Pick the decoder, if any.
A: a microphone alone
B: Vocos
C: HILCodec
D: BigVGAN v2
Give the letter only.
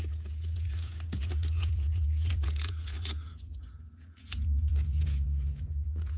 B